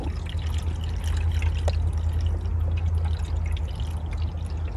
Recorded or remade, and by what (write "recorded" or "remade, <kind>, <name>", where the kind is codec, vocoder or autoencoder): recorded